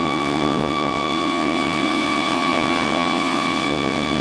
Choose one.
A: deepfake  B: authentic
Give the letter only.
A